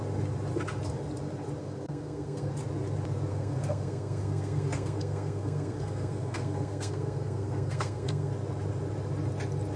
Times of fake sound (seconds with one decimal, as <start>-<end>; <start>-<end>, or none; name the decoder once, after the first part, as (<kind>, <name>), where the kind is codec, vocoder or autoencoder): 1.6-2.5 (codec, SNAC); 3.3-8.3